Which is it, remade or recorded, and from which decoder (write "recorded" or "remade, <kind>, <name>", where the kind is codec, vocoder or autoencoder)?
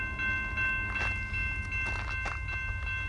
recorded